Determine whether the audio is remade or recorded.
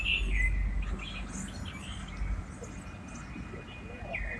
recorded